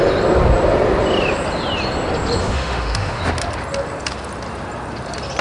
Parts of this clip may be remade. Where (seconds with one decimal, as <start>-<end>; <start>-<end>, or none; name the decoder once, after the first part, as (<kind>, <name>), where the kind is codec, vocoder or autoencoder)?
2.4-3.2 (autoencoder, DAC-VAE)